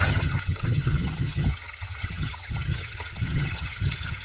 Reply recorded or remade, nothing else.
remade